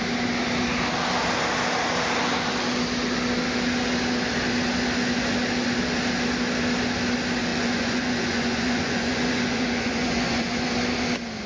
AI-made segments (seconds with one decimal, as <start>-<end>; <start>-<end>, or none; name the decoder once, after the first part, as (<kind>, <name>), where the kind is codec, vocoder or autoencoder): 7.5-10.7 (vocoder, Vocos)